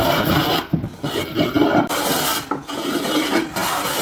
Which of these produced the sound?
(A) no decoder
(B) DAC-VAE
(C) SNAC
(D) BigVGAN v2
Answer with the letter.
D